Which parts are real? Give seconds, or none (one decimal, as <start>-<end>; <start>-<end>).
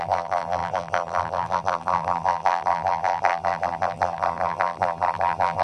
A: none